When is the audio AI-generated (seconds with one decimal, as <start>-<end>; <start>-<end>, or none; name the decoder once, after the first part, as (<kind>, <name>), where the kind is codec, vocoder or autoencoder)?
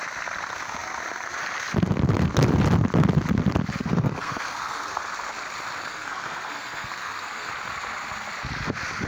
3.8-5.0 (codec, SNAC); 5.9-7.5